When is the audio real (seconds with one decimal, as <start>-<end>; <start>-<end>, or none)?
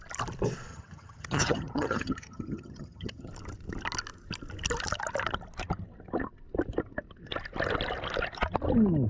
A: 0.0-0.7; 3.3-9.1